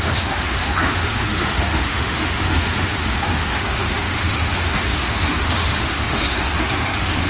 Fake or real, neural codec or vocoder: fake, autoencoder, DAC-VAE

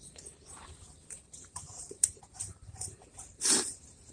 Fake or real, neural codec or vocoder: fake, vocoder, BigVGAN v2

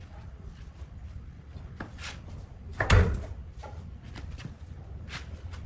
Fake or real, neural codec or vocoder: real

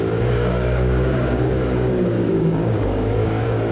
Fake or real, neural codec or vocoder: fake, codec, DAC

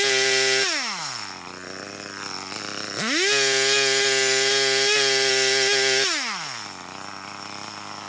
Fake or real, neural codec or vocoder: real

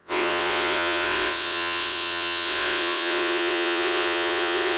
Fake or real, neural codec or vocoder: fake, vocoder, WaveNeXt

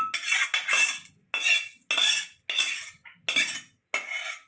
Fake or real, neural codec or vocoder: real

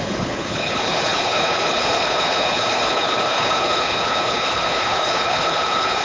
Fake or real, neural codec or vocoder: fake, codec, HILCodec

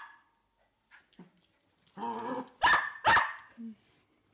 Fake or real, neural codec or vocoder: real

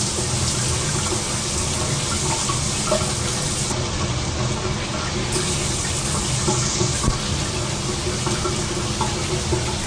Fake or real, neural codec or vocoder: real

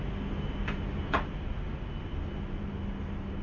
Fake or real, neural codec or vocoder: real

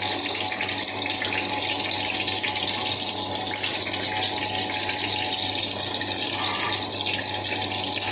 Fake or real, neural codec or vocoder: real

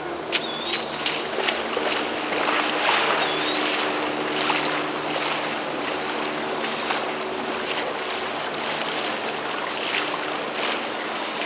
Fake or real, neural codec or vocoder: real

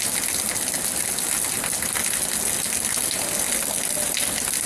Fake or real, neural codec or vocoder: real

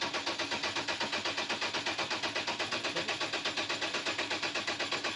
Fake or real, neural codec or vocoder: real